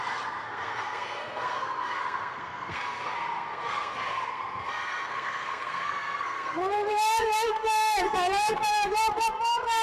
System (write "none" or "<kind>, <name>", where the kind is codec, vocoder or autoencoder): codec, SNAC